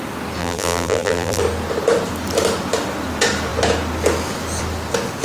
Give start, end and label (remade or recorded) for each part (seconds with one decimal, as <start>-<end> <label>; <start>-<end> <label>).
0.0-0.4 recorded; 0.4-1.4 remade; 1.4-5.2 recorded